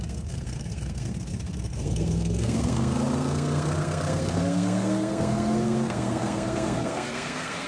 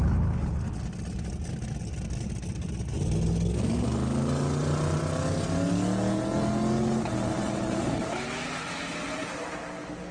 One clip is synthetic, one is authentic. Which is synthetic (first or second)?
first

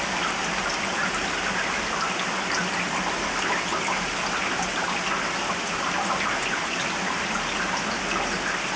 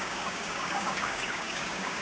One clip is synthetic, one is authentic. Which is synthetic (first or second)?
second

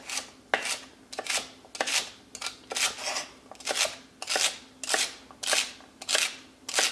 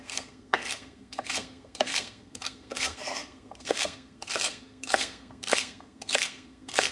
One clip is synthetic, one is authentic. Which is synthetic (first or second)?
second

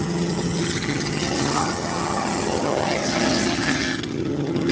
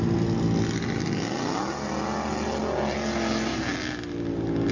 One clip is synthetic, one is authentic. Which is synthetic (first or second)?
first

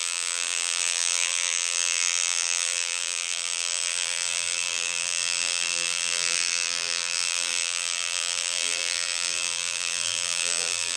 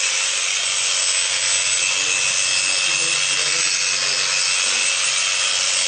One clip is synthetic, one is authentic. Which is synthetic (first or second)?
first